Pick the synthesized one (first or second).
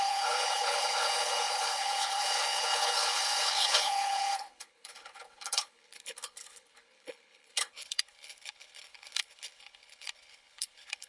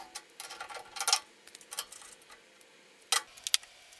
first